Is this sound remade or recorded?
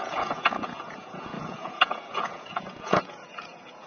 remade